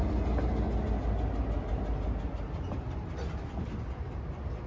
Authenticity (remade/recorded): recorded